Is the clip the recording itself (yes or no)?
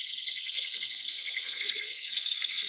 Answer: no